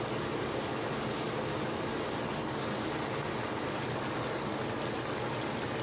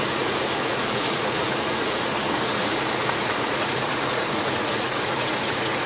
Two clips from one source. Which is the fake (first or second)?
second